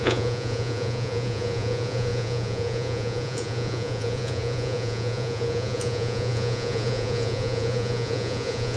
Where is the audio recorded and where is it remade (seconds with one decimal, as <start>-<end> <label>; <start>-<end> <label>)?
0.0-8.8 remade